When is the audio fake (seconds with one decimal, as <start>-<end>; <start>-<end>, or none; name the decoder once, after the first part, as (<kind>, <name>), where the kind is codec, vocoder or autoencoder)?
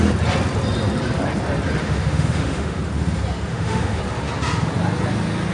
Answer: 1.8-2.8 (autoencoder, DAC-VAE); 3.5-4.0